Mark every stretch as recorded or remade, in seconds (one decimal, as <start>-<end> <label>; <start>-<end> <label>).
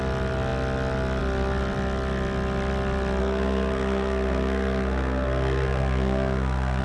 0.0-3.2 recorded; 3.2-6.8 remade